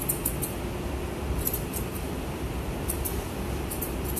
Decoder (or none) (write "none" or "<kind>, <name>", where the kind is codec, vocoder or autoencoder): none